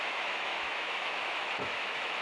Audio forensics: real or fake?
fake